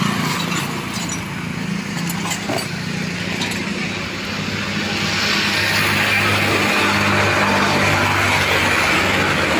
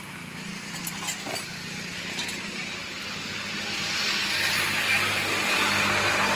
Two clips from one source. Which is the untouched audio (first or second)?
first